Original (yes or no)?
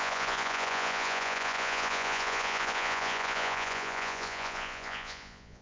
no